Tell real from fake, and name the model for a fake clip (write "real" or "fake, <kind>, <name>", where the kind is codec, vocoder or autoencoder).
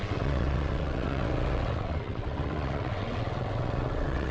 fake, vocoder, WaveNeXt